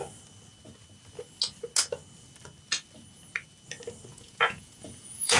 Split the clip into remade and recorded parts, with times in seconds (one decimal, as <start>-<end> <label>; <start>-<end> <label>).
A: 0.0-4.1 recorded; 4.1-5.4 remade